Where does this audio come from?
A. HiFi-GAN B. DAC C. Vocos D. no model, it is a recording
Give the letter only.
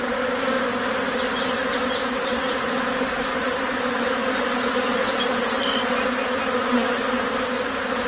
D